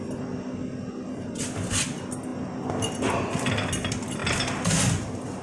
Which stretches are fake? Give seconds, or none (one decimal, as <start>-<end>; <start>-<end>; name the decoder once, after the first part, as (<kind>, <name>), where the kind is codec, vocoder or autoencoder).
none